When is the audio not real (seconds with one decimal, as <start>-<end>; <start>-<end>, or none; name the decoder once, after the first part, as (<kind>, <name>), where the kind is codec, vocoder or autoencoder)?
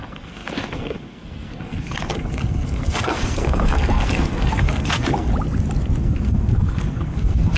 0.0-5.3 (codec, SNAC); 6.0-7.6